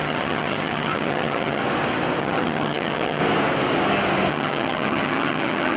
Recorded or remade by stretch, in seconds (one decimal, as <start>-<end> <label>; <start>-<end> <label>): 0.0-1.6 remade; 1.6-2.2 recorded; 2.2-3.2 remade; 3.2-4.3 recorded; 4.3-5.8 remade